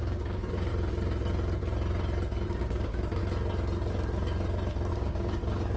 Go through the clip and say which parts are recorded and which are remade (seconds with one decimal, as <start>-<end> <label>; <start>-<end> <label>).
0.0-0.7 remade; 0.7-2.6 recorded; 2.6-3.2 remade; 3.2-4.9 recorded; 4.9-5.8 remade